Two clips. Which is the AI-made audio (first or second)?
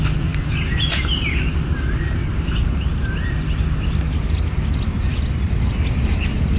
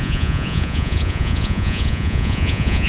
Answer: second